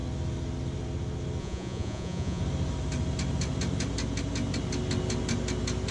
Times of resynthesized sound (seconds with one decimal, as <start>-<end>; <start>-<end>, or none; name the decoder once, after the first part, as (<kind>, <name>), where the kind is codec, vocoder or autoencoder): 1.4-2.4 (vocoder, Vocos)